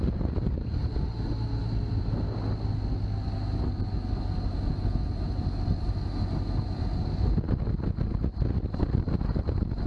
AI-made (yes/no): no